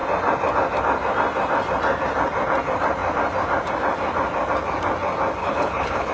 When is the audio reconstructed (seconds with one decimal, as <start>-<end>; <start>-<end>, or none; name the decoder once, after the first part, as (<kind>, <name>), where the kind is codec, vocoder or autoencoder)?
5.4-6.1 (codec, HILCodec)